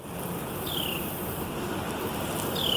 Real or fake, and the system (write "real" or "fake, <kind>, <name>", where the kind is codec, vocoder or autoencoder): real